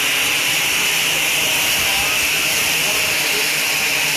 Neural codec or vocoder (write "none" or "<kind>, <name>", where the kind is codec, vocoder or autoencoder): vocoder, BigVGAN v2